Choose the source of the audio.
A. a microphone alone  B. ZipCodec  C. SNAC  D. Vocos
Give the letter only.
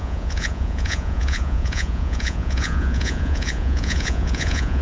D